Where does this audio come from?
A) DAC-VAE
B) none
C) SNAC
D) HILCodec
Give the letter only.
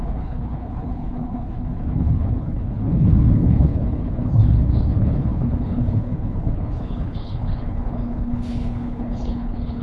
D